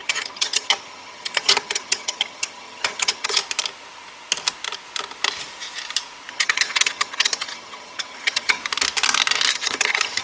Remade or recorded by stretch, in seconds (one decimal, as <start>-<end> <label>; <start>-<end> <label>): 0.0-3.4 remade; 3.4-6.3 recorded; 6.3-8.6 remade; 8.6-9.5 recorded; 9.5-10.2 remade